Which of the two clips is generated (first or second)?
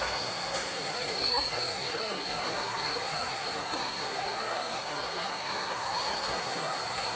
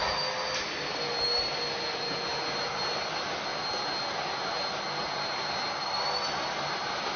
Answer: first